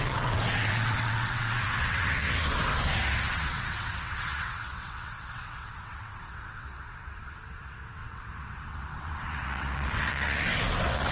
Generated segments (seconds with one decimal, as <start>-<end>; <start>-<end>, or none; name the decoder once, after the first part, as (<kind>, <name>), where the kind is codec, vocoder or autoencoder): 0.0-2.4 (vocoder, WaveNeXt); 3.3-11.1